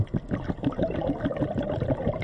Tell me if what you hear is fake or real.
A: fake